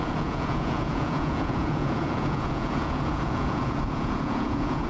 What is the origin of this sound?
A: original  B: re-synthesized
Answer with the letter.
B